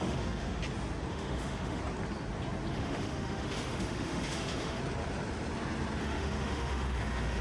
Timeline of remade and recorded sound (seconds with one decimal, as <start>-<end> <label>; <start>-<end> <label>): 0.0-0.6 remade; 0.6-1.1 recorded; 1.1-1.8 remade; 1.8-2.7 recorded; 2.7-4.8 remade; 4.8-6.0 recorded; 6.0-7.4 remade